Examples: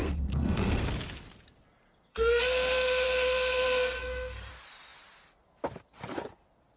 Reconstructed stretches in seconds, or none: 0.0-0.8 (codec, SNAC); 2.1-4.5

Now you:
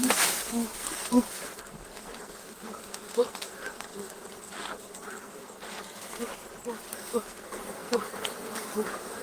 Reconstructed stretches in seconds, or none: 0.0-6.3 (codec, SNAC); 6.9-9.2